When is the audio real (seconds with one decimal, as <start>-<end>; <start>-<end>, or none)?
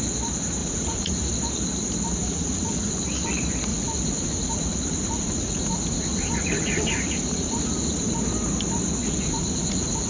0.0-0.6; 1.3-2.2; 2.9-3.7; 8.2-9.0